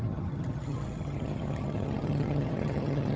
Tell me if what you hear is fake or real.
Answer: fake